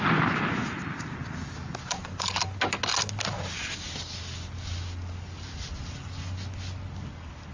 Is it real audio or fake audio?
real